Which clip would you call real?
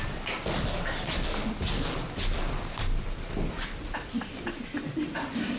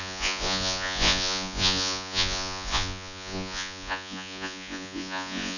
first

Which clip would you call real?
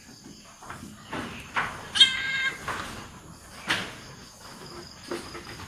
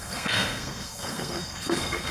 first